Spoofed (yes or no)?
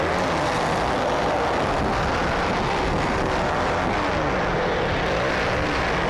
no